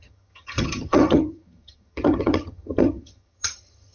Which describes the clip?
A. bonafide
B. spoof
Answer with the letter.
B